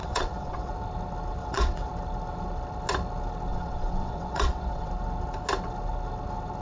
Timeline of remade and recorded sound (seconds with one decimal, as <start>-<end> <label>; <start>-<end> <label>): 0.0-0.7 remade; 0.7-1.4 recorded; 1.4-1.9 remade; 1.9-3.5 recorded; 3.5-4.9 remade; 4.9-6.6 recorded